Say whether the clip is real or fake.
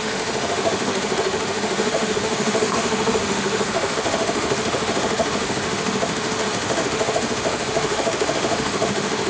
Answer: fake